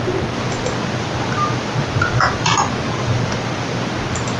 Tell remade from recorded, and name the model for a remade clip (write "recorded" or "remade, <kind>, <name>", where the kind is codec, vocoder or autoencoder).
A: recorded